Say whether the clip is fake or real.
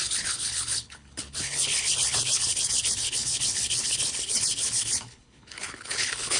fake